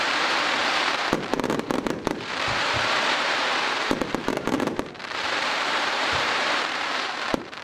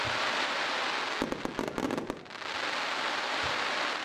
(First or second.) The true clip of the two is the second